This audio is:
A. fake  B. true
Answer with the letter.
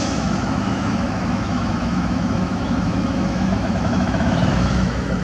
A